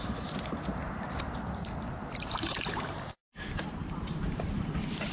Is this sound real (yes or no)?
no